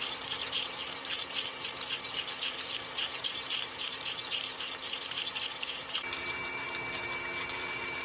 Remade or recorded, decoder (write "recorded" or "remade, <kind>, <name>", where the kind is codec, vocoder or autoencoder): remade, vocoder, BigVGAN v2